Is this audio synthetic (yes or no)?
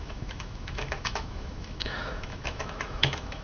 yes